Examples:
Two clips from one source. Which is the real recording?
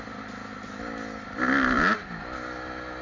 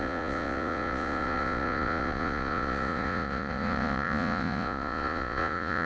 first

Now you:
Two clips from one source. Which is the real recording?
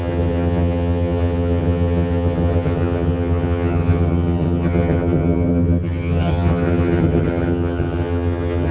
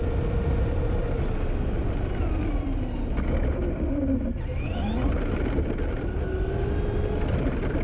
second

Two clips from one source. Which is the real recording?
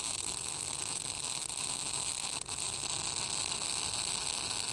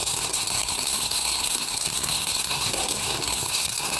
first